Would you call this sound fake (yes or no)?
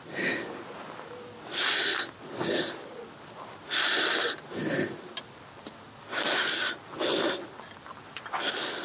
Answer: no